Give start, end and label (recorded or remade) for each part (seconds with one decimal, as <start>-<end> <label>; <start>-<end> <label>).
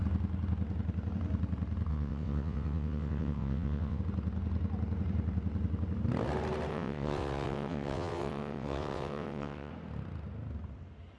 0.0-1.9 recorded; 1.9-4.0 remade; 4.0-6.7 recorded; 6.7-9.7 remade; 9.7-11.2 recorded